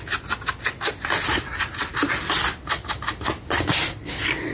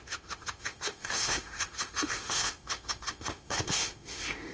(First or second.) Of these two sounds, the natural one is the first